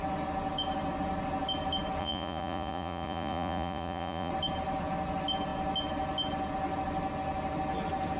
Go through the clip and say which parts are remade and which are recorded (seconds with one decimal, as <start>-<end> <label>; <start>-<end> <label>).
0.0-2.0 recorded; 2.0-4.3 remade; 4.3-8.2 recorded